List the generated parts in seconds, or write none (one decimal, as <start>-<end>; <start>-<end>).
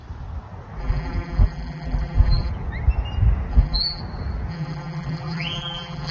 0.8-2.5; 3.5-4.0; 4.5-6.1